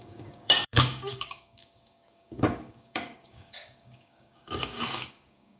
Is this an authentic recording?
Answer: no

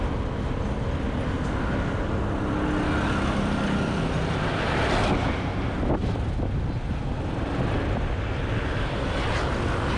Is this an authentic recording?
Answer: yes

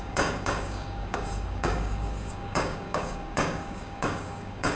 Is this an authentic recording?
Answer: no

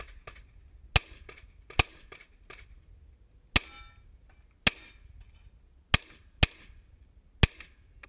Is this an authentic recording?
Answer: yes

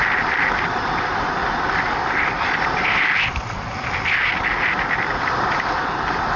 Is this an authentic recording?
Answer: yes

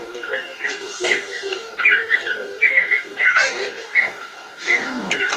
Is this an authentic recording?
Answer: no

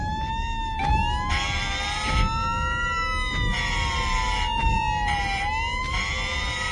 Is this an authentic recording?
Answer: yes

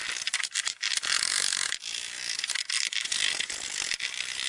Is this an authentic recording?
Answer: yes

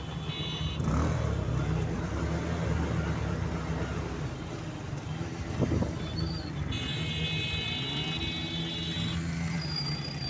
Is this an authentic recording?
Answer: yes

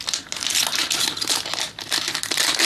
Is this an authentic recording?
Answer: yes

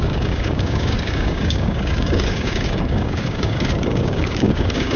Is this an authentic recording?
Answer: no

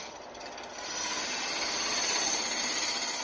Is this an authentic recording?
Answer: yes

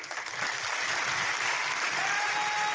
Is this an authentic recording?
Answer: yes